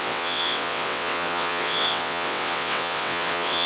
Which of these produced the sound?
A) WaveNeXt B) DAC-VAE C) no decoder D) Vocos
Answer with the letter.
A